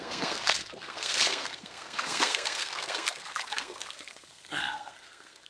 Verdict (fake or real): fake